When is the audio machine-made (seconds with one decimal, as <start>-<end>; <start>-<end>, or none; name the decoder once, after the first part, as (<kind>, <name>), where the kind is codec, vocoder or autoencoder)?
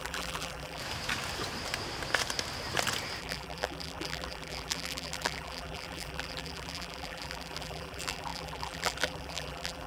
0.0-0.8 (vocoder, BigVGAN v2); 3.2-9.9